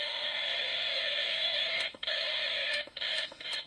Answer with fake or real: fake